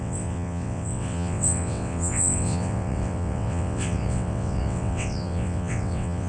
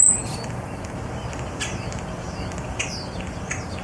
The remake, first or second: first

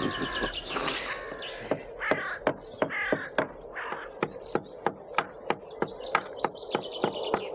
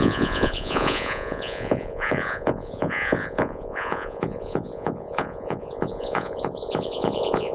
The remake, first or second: second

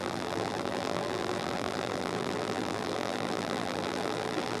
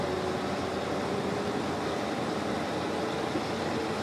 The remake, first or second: first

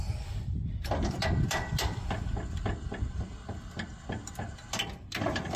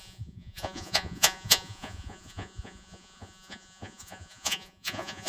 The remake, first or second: second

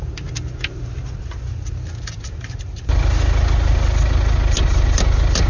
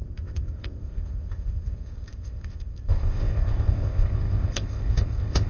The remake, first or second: second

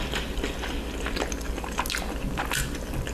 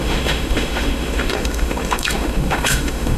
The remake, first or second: second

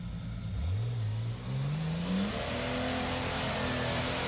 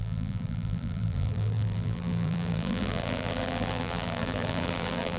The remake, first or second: second